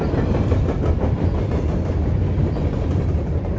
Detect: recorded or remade remade